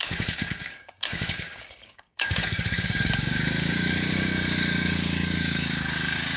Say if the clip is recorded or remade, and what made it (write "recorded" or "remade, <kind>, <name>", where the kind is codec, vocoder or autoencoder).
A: remade, codec, DAC